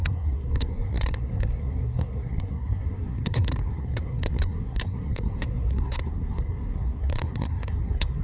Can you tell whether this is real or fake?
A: fake